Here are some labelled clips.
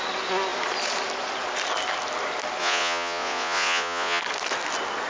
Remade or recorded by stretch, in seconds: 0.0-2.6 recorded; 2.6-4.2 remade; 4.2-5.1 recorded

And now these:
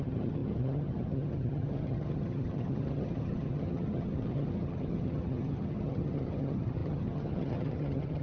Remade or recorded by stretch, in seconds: 0.0-8.2 remade